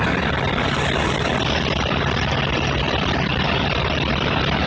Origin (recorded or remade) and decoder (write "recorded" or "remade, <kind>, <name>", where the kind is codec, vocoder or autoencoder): recorded